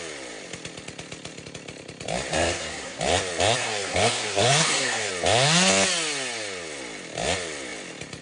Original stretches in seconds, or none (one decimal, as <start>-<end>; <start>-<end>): 0.0-2.3; 3.0-3.6; 5.1-8.2

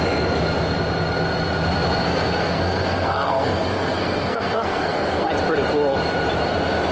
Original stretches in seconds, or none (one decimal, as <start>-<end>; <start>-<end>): 0.0-2.0; 5.3-6.9

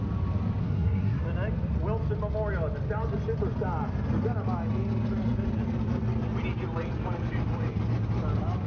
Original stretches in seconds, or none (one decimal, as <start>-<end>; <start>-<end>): 0.0-0.6; 1.2-8.7

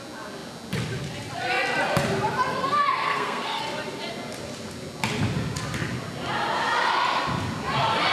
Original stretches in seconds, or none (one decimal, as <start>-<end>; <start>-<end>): 0.0-2.6; 3.6-8.1

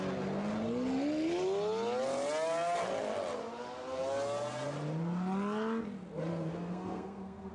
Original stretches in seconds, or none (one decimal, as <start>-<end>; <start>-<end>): 0.0-6.3

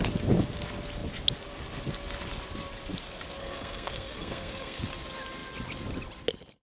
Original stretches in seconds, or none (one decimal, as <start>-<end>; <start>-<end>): 0.0-3.4; 4.8-6.7